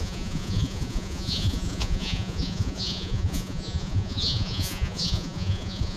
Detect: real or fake fake